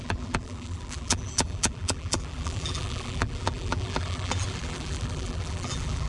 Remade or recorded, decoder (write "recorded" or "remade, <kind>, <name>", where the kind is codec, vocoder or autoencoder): remade, vocoder, BigVGAN v2